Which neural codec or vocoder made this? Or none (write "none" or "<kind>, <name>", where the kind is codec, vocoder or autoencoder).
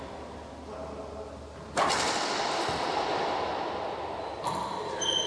none